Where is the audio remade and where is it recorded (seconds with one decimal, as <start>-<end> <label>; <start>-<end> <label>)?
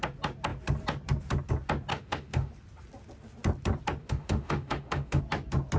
0.0-1.9 recorded; 1.9-2.5 remade; 2.5-4.0 recorded; 4.0-5.2 remade; 5.2-5.8 recorded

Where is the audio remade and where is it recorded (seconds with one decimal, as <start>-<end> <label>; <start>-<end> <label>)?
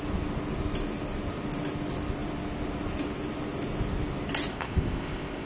0.0-4.5 recorded; 4.5-5.5 remade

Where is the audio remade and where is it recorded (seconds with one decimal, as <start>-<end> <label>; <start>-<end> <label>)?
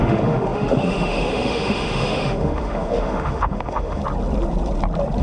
0.0-4.0 remade; 4.0-5.2 recorded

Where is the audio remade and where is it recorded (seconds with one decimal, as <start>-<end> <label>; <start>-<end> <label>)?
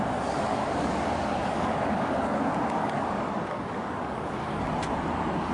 0.0-0.5 recorded; 0.5-2.4 remade; 2.4-2.8 recorded; 2.8-4.6 remade; 4.6-5.5 recorded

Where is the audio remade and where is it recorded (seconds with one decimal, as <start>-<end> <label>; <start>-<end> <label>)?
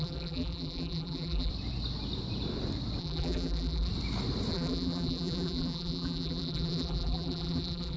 0.0-1.5 remade; 1.5-3.0 recorded; 3.0-3.9 remade; 3.9-4.5 recorded; 4.5-8.0 remade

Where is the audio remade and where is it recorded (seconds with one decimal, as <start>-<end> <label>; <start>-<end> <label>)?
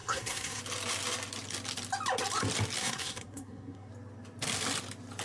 0.0-0.6 remade; 0.6-2.8 recorded; 2.8-3.9 remade; 3.9-5.2 recorded